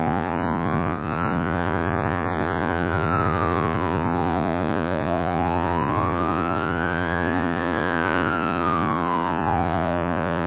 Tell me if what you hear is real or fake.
fake